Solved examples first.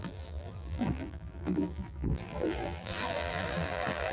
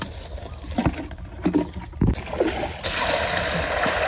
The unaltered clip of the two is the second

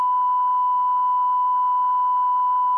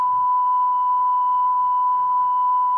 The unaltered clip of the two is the first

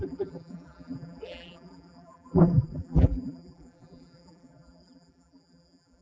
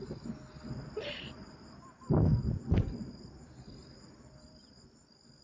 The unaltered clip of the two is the second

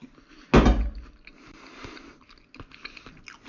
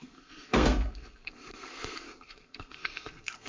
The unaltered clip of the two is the first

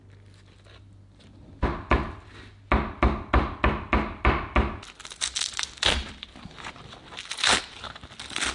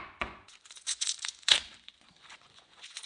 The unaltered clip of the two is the first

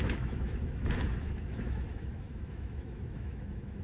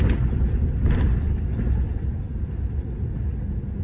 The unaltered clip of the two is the second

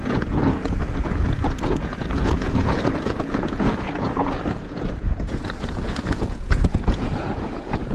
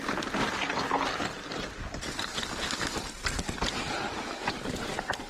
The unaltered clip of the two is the second